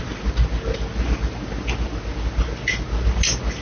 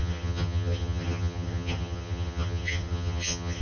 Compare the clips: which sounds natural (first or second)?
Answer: first